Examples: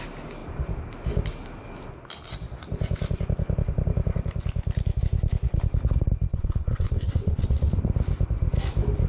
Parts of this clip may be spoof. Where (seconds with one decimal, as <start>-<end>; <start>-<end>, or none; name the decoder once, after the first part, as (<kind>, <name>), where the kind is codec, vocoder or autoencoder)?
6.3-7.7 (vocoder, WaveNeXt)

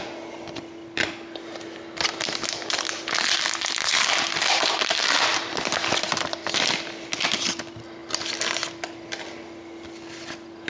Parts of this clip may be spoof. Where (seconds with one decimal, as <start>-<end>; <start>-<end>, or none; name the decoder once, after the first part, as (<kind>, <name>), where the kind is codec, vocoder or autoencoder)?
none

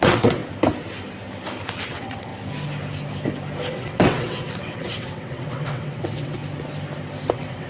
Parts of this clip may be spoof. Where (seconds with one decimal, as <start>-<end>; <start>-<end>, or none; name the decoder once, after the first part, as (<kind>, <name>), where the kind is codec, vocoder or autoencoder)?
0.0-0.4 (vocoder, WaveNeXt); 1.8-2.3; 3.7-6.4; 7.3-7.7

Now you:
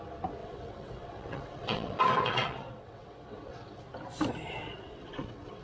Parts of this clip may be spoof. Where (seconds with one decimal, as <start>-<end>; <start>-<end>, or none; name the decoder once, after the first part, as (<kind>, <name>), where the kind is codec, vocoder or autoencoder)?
0.4-3.8 (vocoder, WaveNeXt); 4.7-5.6

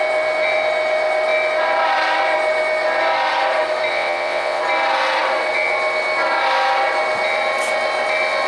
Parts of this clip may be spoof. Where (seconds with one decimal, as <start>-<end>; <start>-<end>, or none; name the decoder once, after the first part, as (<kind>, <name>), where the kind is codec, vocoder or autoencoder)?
3.9-4.6 (vocoder, WaveNeXt)

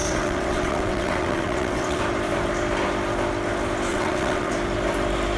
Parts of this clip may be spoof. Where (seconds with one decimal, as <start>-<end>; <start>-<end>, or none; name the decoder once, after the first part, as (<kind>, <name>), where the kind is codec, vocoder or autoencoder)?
0.0-2.0 (vocoder, WaveNeXt); 3.9-4.5

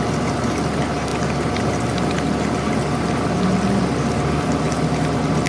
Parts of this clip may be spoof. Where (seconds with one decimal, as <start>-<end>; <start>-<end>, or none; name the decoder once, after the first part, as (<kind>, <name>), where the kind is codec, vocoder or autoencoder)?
none

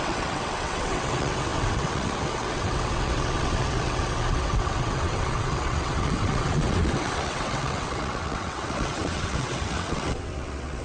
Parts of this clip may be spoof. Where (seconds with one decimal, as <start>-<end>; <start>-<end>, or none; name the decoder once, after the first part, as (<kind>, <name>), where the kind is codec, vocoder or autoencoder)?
0.0-10.8 (vocoder, WaveNeXt)